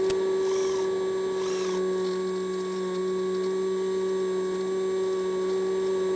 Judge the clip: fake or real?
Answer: real